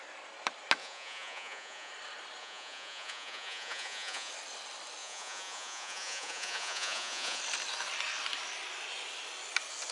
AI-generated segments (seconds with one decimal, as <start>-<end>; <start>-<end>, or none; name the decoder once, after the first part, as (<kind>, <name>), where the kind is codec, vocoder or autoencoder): 0.8-1.9 (vocoder, Vocos); 2.4-4.3; 5.0-7.4